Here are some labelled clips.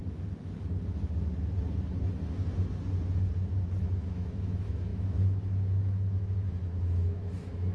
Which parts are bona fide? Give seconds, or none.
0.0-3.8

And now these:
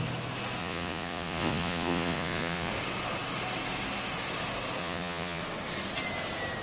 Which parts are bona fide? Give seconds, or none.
0.0-0.6; 2.7-4.8; 5.4-6.6

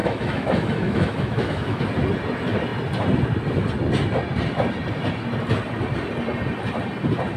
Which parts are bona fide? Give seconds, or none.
1.8-7.4

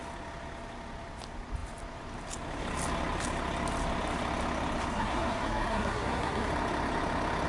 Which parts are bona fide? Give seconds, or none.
0.0-4.9; 6.5-7.5

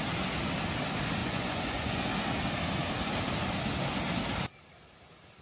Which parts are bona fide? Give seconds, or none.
0.0-1.2; 2.1-5.4

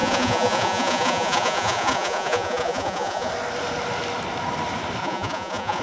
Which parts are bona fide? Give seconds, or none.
3.3-5.0